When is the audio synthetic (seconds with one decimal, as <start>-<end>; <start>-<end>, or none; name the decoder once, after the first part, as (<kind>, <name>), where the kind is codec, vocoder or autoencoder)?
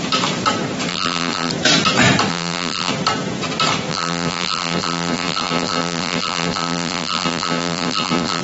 0.9-1.5 (vocoder, BigVGAN v2); 2.3-2.9; 3.9-8.4